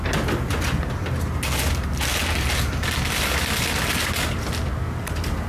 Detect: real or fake real